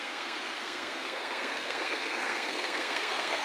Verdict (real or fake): fake